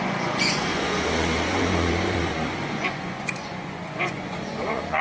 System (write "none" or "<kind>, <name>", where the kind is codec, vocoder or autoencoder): vocoder, Vocos